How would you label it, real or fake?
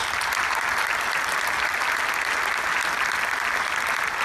real